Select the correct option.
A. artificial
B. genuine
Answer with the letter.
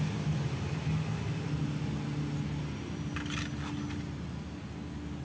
B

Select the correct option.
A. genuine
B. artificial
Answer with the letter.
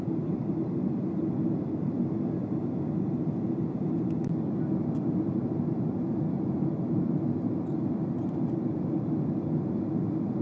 A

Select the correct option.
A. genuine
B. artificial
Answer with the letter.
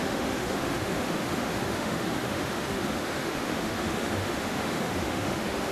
B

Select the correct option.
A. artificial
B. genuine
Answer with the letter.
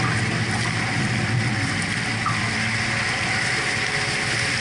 B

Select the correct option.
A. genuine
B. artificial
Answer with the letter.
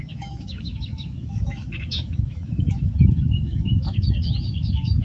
B